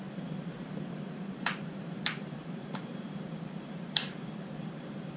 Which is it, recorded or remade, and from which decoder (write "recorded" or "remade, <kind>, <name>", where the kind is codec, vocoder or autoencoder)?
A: remade, vocoder, BigVGAN v2